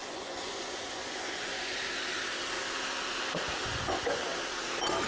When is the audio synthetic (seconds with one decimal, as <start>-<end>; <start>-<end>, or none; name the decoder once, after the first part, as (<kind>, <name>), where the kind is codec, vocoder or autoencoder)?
0.0-1.8 (vocoder, Vocos); 3.6-4.2